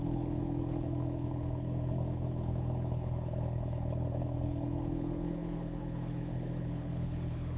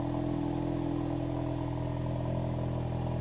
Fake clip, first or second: first